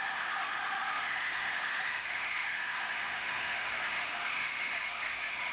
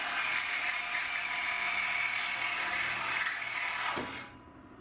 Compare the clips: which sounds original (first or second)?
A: second